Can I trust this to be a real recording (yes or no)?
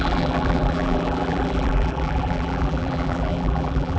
no